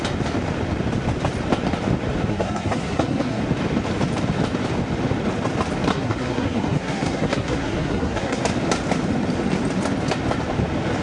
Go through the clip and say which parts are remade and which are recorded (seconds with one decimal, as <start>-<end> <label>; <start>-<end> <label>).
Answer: 0.0-2.3 recorded; 2.3-3.4 remade; 3.4-5.9 recorded; 5.9-8.4 remade; 8.4-11.0 recorded